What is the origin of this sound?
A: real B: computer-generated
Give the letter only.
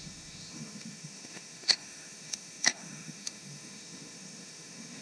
B